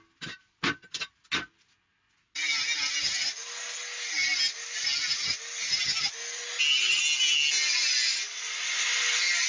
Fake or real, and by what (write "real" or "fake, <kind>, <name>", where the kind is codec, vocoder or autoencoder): real